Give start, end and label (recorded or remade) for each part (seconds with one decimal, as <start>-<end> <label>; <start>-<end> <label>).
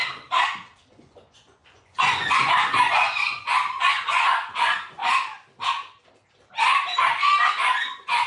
0.0-0.9 recorded; 0.9-5.0 remade; 5.0-7.5 recorded; 7.5-8.3 remade